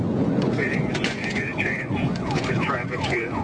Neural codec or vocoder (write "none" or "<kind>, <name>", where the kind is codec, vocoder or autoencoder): vocoder, Vocos